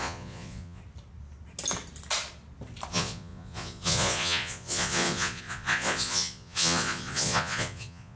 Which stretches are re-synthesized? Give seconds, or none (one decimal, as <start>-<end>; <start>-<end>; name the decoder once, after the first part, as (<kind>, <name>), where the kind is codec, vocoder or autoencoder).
0.0-0.8 (vocoder, Vocos); 2.9-8.2